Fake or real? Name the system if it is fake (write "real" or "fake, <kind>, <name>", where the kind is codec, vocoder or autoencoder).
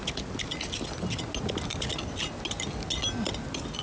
real